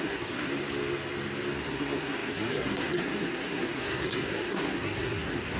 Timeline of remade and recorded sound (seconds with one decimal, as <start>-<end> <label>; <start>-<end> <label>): 0.0-0.5 remade; 0.5-1.6 recorded; 1.6-5.6 remade